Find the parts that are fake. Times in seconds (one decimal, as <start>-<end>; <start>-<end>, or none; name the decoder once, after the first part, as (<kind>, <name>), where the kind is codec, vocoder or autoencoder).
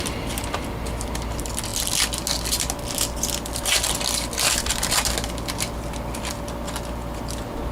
none